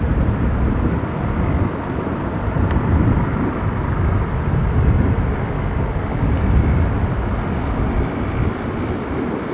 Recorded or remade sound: recorded